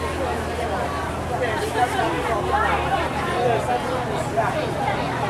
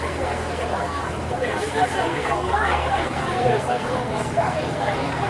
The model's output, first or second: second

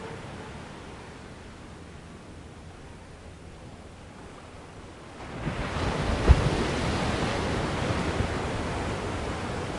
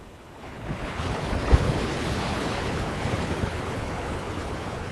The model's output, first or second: second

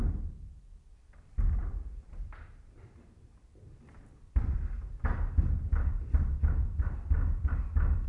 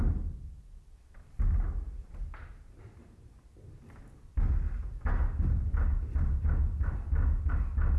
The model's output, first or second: first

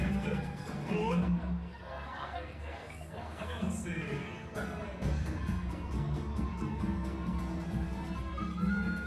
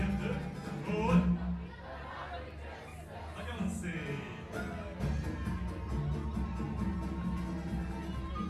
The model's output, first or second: first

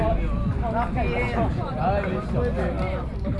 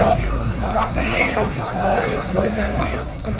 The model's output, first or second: second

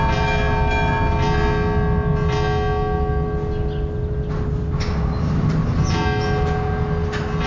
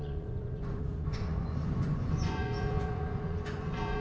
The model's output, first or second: second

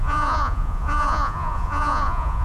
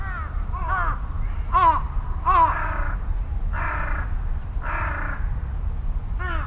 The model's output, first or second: first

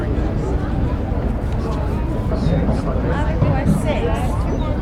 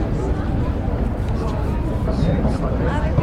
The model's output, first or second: second